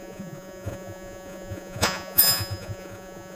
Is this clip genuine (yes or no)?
no